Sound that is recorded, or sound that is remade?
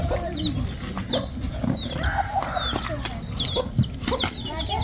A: recorded